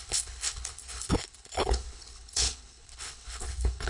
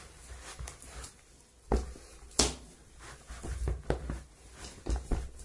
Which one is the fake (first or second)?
first